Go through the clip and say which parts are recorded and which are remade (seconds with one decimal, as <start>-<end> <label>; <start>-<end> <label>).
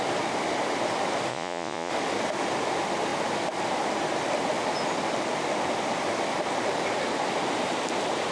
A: 0.0-1.3 recorded; 1.3-1.9 remade; 1.9-8.3 recorded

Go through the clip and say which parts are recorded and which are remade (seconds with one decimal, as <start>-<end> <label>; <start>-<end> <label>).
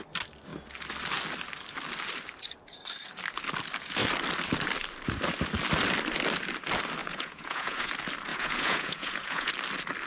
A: 0.0-7.0 recorded; 7.0-7.9 remade; 7.9-8.3 recorded; 8.3-9.5 remade; 9.5-10.1 recorded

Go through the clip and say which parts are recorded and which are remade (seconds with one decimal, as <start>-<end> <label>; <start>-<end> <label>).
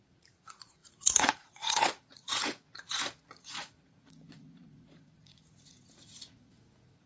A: 0.0-7.1 remade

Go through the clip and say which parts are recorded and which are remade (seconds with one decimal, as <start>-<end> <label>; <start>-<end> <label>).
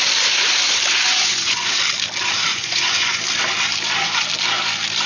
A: 0.0-1.1 recorded; 1.1-1.7 remade; 1.7-2.5 recorded; 2.5-3.2 remade; 3.2-5.1 recorded